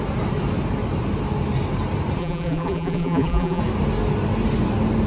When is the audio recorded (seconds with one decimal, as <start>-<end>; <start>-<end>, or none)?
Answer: 0.0-2.2; 3.6-5.1

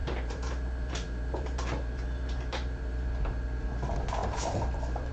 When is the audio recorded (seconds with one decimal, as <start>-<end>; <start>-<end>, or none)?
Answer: 3.1-4.2